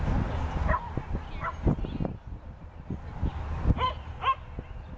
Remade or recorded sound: recorded